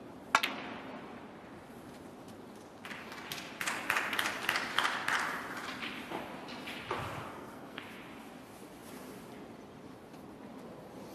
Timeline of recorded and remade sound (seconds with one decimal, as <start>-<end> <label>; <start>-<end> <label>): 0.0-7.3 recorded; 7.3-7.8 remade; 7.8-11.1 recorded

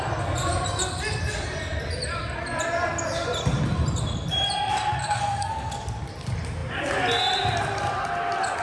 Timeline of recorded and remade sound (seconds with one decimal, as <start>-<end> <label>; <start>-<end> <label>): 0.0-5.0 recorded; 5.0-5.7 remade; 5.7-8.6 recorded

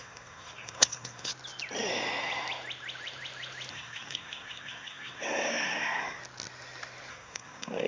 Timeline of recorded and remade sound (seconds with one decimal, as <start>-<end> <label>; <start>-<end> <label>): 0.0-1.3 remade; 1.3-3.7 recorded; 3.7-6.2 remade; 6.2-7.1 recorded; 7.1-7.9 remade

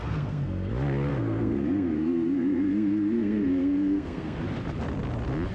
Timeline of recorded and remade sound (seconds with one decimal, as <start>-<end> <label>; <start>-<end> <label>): 0.0-0.7 remade; 0.7-1.1 recorded; 1.1-4.4 remade; 4.4-5.5 recorded

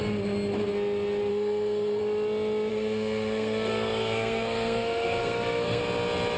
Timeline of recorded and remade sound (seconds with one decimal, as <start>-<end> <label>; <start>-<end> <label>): 0.0-1.3 recorded; 1.3-2.0 remade; 2.0-2.7 recorded; 2.7-5.8 remade; 5.8-6.4 recorded

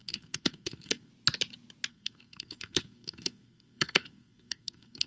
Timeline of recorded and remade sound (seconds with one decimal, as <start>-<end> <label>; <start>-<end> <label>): 0.0-1.1 remade; 1.1-1.9 recorded; 1.9-5.1 remade

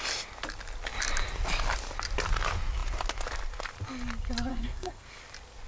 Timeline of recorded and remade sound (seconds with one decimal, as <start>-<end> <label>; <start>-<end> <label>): 0.0-4.5 recorded; 4.5-5.2 remade; 5.2-5.7 recorded